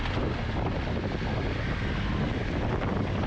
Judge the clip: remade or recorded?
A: recorded